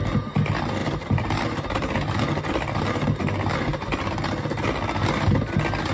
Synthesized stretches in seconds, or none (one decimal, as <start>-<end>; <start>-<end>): 0.8-2.3